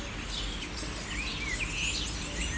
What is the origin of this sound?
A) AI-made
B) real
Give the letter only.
B